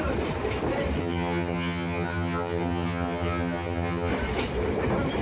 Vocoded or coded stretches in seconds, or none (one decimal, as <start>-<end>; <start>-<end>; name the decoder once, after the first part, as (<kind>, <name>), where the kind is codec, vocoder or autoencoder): 1.0-4.1 (vocoder, HiFi-GAN)